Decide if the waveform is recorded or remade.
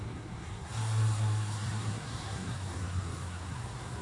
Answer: remade